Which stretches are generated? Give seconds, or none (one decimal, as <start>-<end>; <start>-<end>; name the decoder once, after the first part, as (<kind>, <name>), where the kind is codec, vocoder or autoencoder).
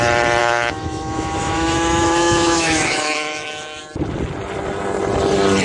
0.4-3.8 (autoencoder, DAC-VAE)